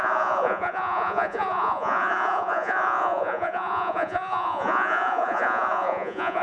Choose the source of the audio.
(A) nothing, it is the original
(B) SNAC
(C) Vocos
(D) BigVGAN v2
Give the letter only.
C